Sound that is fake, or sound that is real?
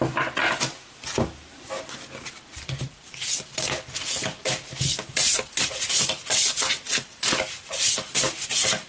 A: real